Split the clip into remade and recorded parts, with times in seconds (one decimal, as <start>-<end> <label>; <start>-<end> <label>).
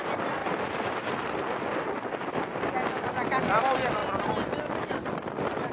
0.0-5.7 recorded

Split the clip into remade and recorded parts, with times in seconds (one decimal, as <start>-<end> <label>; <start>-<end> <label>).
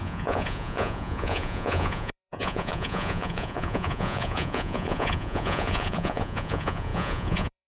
0.0-7.7 remade